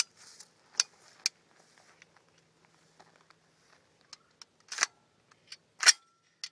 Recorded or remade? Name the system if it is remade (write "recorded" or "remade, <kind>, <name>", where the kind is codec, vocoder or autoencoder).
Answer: recorded